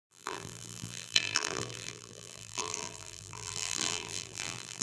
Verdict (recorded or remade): remade